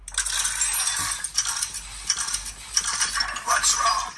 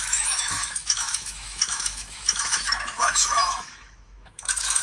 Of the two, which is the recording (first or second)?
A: first